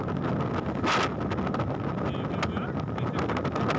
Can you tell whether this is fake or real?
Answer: real